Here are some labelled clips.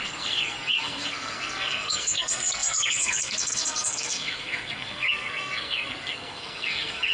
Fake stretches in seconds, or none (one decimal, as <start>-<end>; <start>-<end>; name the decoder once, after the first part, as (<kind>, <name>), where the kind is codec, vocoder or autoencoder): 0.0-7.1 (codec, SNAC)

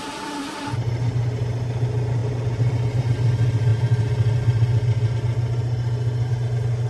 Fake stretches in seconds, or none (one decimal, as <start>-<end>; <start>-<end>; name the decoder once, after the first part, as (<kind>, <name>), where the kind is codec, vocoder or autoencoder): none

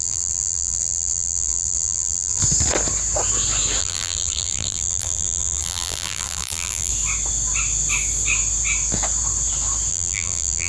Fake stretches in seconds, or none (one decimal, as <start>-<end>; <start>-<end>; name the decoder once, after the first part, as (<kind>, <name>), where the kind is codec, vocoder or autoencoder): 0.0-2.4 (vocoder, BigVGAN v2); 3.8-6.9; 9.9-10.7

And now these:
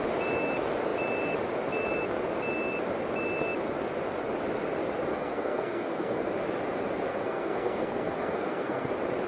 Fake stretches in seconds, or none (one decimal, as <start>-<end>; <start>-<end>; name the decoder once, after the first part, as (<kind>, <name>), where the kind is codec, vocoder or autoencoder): 5.1-6.3 (codec, SNAC); 7.1-8.9

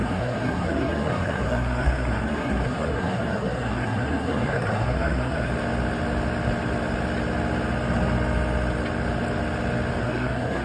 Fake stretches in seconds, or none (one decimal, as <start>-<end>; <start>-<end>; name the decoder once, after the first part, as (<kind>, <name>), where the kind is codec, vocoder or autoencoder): 0.0-5.5 (codec, SNAC); 10.0-10.6